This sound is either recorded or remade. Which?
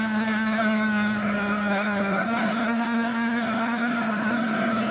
remade